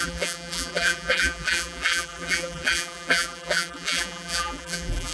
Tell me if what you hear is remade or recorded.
remade